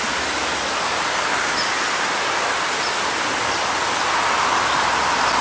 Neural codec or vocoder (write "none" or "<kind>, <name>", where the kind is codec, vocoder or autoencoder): none